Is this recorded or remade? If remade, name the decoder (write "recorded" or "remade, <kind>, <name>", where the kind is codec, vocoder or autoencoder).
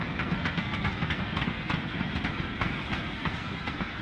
remade, codec, SNAC